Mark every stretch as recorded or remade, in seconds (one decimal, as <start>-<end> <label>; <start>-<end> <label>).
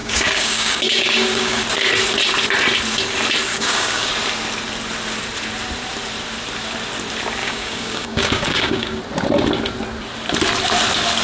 0.0-1.6 remade; 1.6-3.5 recorded; 3.5-4.1 remade; 4.1-7.4 recorded; 7.4-9.0 remade; 9.0-11.2 recorded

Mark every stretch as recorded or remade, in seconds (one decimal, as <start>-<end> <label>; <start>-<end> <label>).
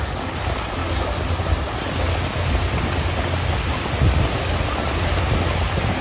0.0-6.0 recorded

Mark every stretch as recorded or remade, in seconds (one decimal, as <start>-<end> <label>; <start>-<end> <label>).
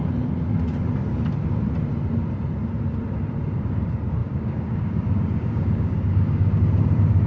0.0-4.2 recorded; 4.2-6.6 remade; 6.6-7.3 recorded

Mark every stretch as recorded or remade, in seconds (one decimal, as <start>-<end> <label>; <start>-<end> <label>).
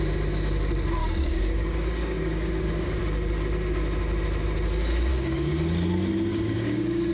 0.0-1.0 recorded; 1.0-3.0 remade; 3.0-5.1 recorded; 5.1-5.6 remade; 5.6-6.3 recorded; 6.3-7.1 remade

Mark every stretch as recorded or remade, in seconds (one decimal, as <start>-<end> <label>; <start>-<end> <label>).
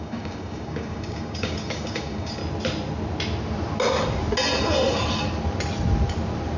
0.0-2.4 remade; 2.4-6.6 recorded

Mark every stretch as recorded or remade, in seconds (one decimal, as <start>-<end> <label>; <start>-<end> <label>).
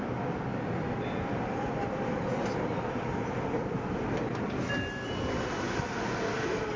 0.0-6.8 recorded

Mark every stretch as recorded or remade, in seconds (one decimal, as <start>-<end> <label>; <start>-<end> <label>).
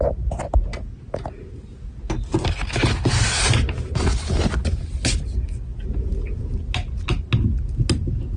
0.0-8.4 recorded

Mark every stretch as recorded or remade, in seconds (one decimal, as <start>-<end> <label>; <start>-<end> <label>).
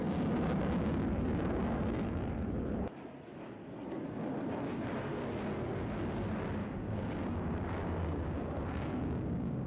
0.0-6.6 recorded; 6.6-9.7 remade